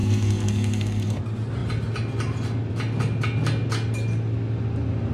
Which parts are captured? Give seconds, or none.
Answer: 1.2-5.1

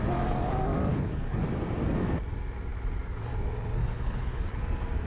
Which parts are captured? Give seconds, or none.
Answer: 0.0-0.9; 1.4-3.8; 4.6-5.1

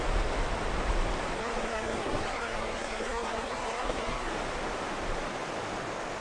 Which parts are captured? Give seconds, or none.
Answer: 0.0-1.4; 4.3-6.2

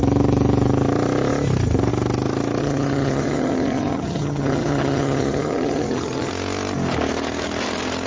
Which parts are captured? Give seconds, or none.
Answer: 0.0-2.6; 6.3-8.1

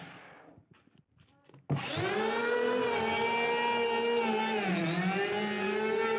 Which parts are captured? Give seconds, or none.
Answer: 0.0-6.2

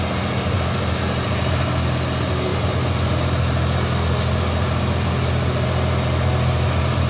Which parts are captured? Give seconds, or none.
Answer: 0.0-7.1